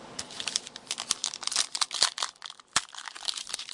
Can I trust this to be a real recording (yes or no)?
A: yes